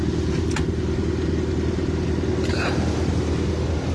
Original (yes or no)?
yes